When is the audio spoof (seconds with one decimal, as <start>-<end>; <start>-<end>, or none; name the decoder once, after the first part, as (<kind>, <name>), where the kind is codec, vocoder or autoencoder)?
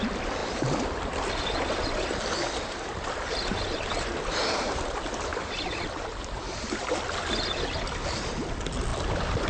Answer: 5.3-7.0 (vocoder, BigVGAN v2); 8.9-9.5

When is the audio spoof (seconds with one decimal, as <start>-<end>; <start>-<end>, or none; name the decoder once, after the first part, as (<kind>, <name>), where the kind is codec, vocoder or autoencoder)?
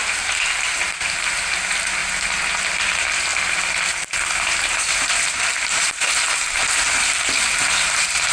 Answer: 0.0-2.0 (vocoder, BigVGAN v2); 2.9-3.3; 4.5-8.3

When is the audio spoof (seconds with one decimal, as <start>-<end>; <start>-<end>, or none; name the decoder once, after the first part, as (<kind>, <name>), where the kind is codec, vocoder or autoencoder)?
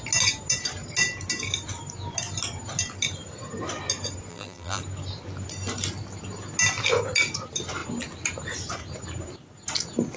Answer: 4.3-4.8 (vocoder, BigVGAN v2)